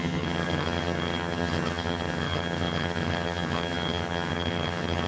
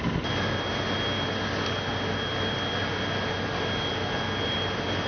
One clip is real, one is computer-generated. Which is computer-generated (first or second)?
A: first